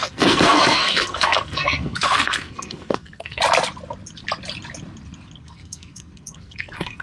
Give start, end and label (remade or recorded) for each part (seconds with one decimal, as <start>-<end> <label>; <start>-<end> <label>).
0.0-3.4 remade; 3.4-5.4 recorded; 5.4-7.0 remade